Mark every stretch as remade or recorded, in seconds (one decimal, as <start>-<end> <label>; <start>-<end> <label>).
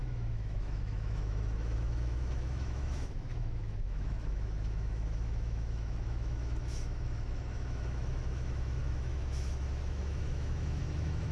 0.0-11.3 remade